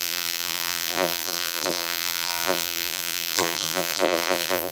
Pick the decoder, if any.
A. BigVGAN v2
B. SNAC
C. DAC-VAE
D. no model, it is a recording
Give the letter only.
A